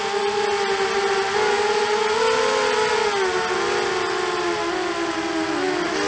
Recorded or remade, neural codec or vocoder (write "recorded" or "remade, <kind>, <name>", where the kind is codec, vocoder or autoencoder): recorded